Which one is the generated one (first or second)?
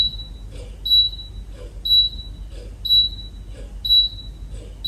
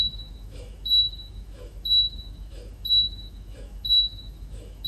second